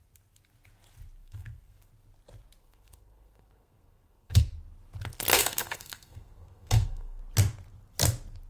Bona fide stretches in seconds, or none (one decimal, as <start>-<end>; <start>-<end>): 0.0-1.2; 1.9-2.6; 4.4-5.3; 7.2-8.5